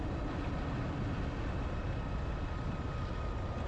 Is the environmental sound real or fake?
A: real